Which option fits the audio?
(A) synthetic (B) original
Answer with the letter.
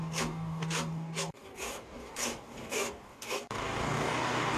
A